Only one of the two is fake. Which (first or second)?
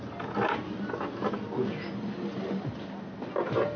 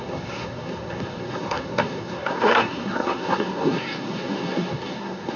second